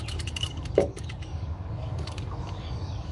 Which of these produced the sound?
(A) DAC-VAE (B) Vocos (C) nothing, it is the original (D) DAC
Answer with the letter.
D